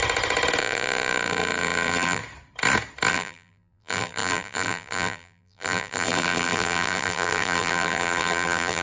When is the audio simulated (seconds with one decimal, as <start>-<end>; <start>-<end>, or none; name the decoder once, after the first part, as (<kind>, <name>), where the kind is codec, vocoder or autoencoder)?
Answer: 0.6-2.2 (vocoder, BigVGAN v2); 3.1-8.8